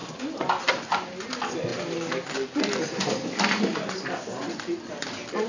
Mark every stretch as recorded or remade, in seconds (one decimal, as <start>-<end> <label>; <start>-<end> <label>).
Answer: 0.0-5.5 recorded